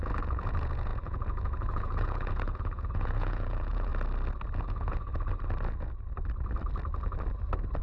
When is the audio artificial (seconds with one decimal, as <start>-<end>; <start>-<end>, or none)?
0.0-3.9; 4.6-5.1